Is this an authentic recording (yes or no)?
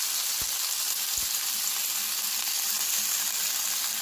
yes